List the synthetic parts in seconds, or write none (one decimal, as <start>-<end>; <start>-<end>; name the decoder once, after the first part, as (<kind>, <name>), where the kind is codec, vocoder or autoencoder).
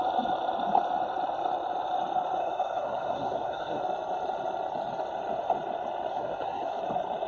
2.4-3.8 (codec, SNAC); 6.1-6.8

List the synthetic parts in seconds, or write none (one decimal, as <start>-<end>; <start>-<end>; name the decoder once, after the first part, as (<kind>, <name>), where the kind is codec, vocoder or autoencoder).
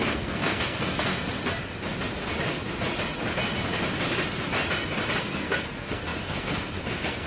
0.0-1.1 (codec, SNAC); 5.2-7.3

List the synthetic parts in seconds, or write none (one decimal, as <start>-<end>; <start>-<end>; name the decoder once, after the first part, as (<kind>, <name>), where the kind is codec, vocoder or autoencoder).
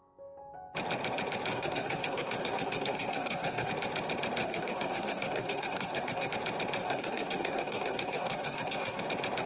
1.5-3.7 (codec, SNAC); 4.4-6.3; 6.8-9.0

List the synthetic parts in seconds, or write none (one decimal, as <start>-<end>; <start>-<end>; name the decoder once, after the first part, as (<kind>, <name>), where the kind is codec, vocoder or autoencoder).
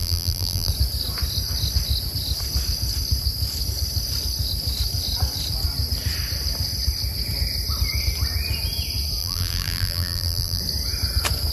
0.0-0.7 (vocoder, BigVGAN v2); 9.2-10.6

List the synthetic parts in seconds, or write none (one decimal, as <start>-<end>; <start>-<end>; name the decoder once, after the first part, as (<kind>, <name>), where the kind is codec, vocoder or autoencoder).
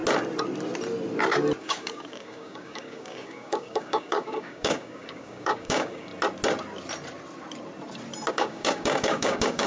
1.6-6.1 (codec, DAC); 8.3-9.7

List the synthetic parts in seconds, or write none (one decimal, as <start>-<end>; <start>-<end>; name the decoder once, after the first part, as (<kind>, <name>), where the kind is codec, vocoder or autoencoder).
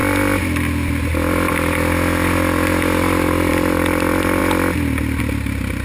none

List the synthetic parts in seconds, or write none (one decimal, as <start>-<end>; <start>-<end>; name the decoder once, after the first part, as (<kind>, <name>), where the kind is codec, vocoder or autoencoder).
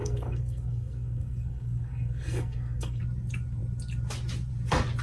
0.0-3.0 (codec, SNAC)